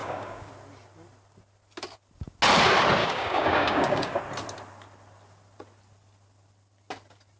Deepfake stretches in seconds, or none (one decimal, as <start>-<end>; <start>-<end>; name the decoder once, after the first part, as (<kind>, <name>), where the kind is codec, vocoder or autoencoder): 0.0-0.5 (codec, DAC); 3.0-4.2